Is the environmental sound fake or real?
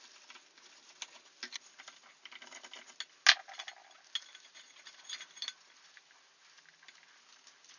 real